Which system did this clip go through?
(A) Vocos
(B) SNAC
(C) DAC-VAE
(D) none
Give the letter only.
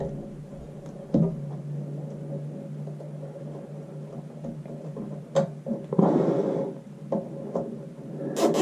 D